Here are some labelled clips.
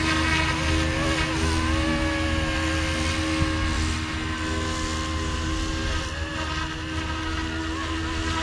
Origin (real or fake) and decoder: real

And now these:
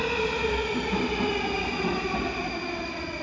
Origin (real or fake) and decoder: real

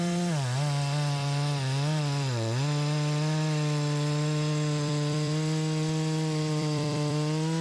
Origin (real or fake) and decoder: fake, vocoder, BigVGAN v2